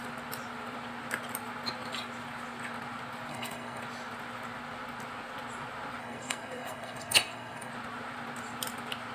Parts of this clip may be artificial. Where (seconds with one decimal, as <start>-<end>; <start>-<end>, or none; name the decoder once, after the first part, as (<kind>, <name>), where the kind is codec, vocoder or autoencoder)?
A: 3.3-3.8 (codec, SNAC); 6.0-7.7